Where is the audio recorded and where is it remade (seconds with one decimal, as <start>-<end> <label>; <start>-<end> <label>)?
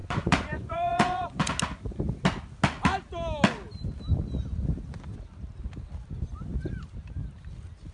0.0-1.5 remade; 1.5-7.9 recorded